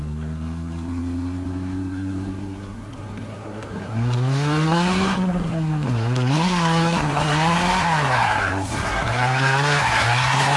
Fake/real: fake